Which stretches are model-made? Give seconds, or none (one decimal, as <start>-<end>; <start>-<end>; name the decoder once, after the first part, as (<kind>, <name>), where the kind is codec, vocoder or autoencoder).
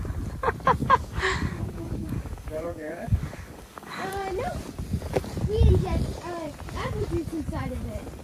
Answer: 0.8-4.1 (codec, DAC)